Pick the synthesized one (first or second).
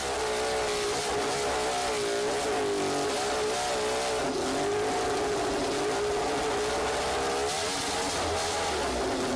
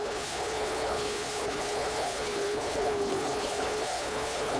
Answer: second